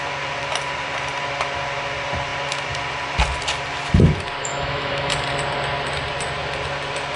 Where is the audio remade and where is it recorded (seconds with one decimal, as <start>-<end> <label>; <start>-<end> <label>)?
0.0-4.5 recorded; 4.5-5.1 remade; 5.1-7.2 recorded